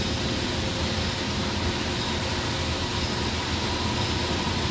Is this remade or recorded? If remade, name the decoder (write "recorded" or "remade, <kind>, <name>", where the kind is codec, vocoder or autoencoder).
recorded